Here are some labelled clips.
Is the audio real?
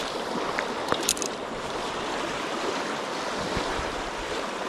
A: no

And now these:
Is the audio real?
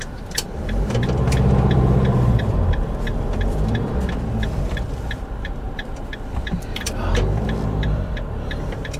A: no